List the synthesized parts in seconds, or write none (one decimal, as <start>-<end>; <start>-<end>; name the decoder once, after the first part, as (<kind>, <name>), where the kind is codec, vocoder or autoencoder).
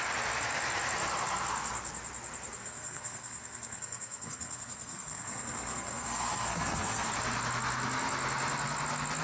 2.6-7.1 (codec, SNAC)